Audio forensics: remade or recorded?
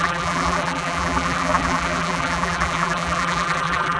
remade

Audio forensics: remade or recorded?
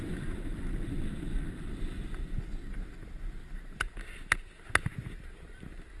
recorded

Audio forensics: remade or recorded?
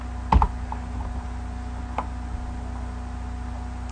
recorded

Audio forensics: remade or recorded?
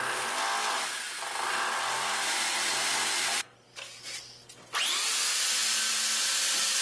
recorded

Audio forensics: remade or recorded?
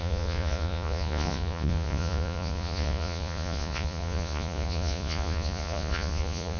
remade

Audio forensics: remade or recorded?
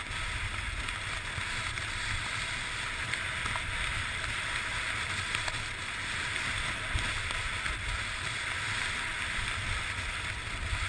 recorded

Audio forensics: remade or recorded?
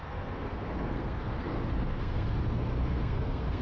remade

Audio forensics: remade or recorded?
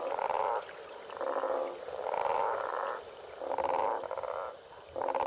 recorded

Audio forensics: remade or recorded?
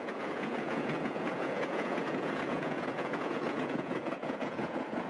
remade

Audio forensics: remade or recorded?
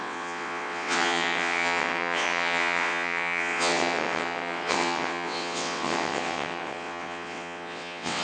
remade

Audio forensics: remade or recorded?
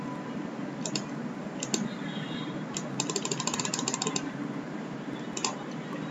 recorded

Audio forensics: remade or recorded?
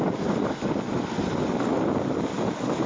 recorded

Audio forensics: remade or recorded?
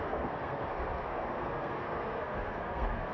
remade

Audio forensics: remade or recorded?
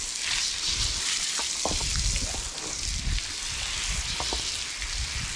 recorded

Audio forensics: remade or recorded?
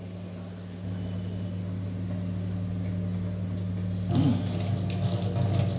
recorded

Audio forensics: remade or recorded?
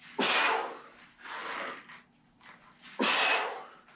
recorded